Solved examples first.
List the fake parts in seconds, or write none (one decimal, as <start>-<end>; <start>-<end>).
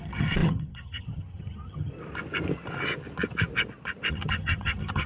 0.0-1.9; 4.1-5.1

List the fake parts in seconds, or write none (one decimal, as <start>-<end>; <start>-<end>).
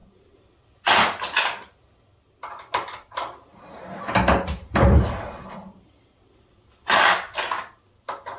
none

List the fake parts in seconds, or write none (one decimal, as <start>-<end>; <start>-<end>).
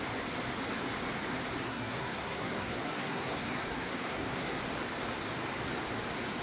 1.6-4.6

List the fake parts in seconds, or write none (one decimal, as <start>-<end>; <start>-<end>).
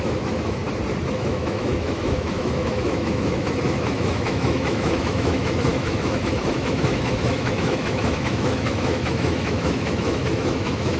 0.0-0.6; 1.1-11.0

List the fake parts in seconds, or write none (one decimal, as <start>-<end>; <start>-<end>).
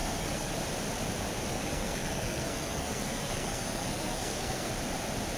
0.0-0.5; 1.5-4.7